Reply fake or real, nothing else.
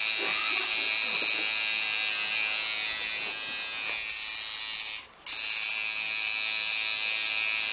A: real